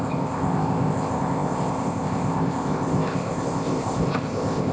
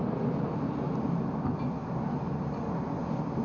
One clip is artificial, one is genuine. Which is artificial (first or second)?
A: first